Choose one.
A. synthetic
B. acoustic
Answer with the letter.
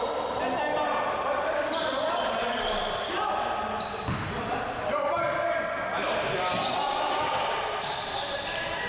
B